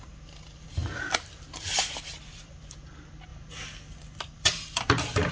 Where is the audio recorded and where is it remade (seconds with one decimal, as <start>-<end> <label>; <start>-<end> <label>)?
0.0-3.3 remade; 3.3-4.2 recorded; 4.2-5.3 remade